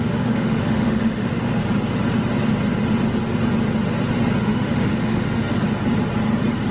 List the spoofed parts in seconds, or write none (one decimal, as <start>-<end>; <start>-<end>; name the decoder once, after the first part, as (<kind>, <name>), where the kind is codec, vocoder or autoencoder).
0.0-1.6 (autoencoder, DAC-VAE); 4.4-5.5